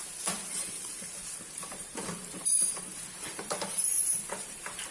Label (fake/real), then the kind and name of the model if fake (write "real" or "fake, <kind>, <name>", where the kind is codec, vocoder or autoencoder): fake, vocoder, BigVGAN v2